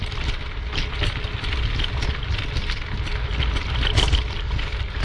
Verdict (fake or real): real